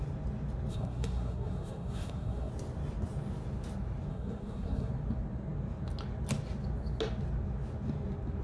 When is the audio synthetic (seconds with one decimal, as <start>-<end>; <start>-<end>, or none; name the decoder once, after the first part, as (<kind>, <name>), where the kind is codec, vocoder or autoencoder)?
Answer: 0.7-2.5 (codec, SNAC); 4.1-4.9